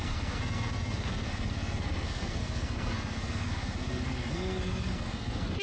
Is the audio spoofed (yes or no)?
yes